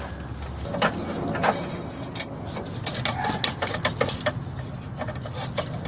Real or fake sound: real